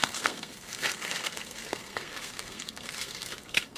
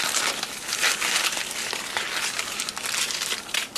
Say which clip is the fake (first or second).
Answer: first